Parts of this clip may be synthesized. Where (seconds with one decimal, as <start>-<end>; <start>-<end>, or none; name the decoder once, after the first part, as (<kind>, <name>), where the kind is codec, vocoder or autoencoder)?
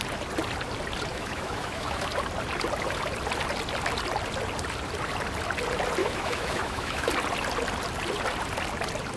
1.1-2.1 (autoencoder, DAC-VAE); 6.0-7.1